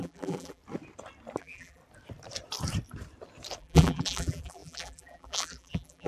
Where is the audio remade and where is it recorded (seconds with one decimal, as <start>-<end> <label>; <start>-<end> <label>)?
0.0-0.6 remade; 0.6-1.4 recorded; 1.4-1.8 remade; 1.8-3.6 recorded; 3.6-6.1 remade